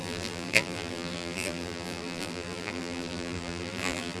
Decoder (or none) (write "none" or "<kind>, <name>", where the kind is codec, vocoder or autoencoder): vocoder, BigVGAN v2